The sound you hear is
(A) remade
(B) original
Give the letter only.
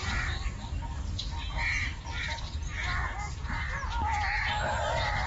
A